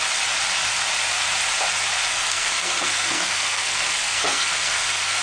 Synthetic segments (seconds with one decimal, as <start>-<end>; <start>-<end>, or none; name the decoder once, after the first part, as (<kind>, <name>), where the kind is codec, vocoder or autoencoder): 2.1-5.2 (codec, SNAC)